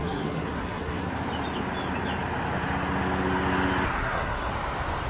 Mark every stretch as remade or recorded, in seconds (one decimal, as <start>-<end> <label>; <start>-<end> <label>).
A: 0.0-1.1 remade; 1.1-3.9 recorded; 3.9-4.5 remade; 4.5-5.1 recorded